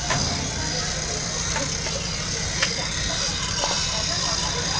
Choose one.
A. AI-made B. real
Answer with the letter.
B